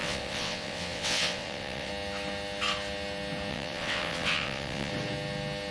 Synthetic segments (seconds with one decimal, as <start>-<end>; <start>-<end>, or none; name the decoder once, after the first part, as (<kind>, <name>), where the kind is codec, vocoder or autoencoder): 0.0-1.9 (vocoder, WaveNeXt); 3.5-4.9